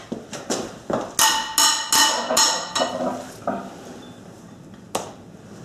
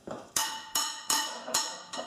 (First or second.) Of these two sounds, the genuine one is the first